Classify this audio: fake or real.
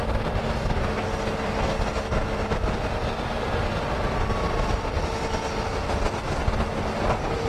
real